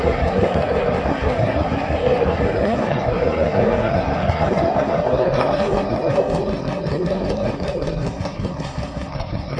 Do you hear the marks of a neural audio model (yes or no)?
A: yes